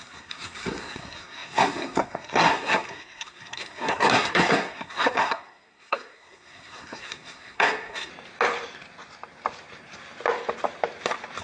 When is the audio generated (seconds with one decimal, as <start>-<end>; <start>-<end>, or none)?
0.0-8.1